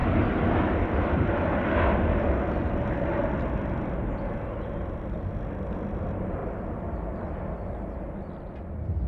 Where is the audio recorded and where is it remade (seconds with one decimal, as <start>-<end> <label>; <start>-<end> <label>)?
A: 0.0-9.1 recorded